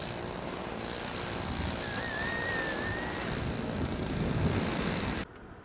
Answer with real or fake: real